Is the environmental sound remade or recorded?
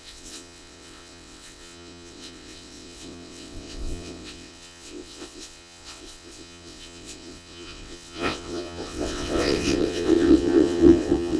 remade